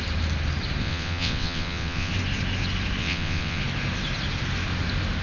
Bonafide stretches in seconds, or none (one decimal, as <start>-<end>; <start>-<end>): 0.0-0.8; 2.1-3.0; 3.6-5.2